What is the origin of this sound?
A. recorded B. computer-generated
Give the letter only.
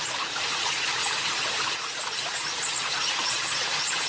B